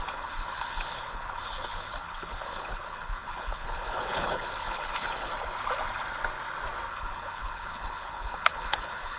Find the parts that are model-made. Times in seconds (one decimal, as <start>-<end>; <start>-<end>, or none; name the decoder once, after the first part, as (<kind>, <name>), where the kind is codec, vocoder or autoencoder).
0.0-5.3 (codec, HILCodec); 6.9-9.2